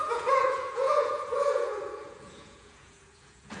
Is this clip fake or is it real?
fake